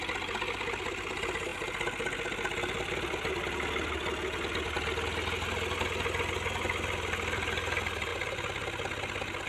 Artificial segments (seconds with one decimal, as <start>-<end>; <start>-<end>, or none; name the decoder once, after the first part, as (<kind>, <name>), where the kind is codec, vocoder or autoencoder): none